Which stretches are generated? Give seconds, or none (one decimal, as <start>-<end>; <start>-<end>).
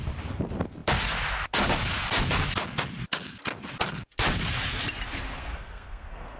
5.4-6.4